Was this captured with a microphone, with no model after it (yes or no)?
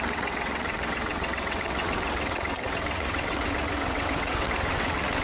no